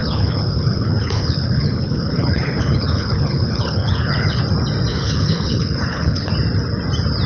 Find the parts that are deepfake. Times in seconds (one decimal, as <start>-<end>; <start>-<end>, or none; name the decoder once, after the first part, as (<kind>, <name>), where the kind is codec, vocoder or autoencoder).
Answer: 0.0-4.4 (codec, HILCodec); 4.9-6.3